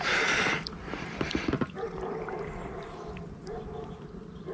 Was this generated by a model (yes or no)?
no